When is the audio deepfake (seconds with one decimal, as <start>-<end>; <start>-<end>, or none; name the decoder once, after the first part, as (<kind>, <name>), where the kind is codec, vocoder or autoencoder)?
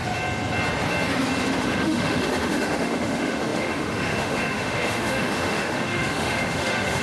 1.6-7.0 (autoencoder, DAC-VAE)